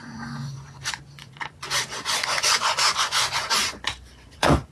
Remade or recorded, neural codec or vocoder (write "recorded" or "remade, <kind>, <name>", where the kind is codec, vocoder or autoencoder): remade, vocoder, Vocos